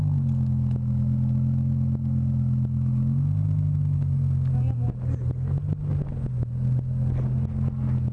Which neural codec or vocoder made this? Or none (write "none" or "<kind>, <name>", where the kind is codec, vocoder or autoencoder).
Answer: none